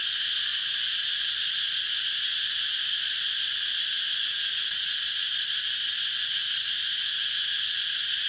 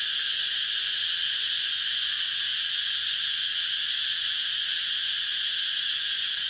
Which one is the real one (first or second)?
first